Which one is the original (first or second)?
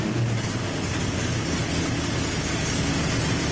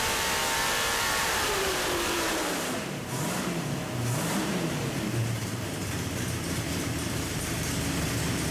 first